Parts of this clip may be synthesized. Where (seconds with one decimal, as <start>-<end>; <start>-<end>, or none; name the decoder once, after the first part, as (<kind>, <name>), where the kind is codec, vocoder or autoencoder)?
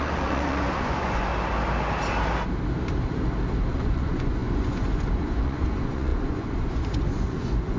0.0-1.3 (vocoder, Vocos); 3.7-7.8